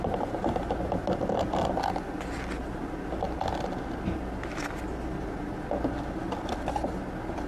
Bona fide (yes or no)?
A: yes